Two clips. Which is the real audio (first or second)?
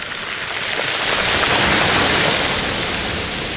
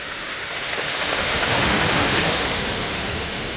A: first